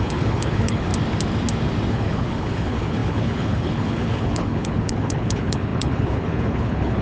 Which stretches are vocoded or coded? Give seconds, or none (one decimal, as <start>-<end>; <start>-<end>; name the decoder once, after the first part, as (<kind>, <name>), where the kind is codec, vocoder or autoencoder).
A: 0.0-0.9 (codec, HILCodec); 1.9-7.0